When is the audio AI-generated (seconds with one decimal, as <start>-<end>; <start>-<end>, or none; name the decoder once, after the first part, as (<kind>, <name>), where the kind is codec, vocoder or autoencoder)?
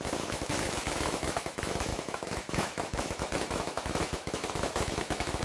0.0-5.4 (autoencoder, DAC-VAE)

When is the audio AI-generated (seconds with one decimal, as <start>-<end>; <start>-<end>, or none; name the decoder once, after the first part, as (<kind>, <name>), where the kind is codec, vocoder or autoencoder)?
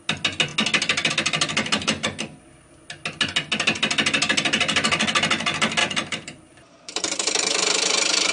5.8-7.6 (vocoder, BigVGAN v2)